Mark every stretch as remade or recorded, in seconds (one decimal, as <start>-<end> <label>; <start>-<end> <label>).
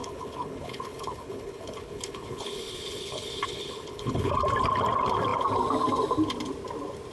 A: 0.0-4.3 remade; 4.3-7.1 recorded